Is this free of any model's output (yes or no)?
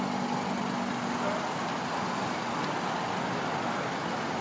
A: yes